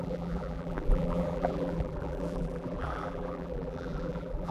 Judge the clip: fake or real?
fake